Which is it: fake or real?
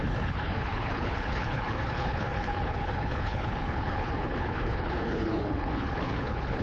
fake